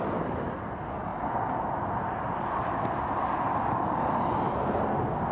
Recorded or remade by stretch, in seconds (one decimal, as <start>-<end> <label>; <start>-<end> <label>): 0.0-5.3 recorded